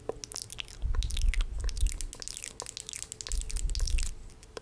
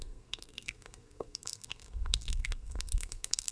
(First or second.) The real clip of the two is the first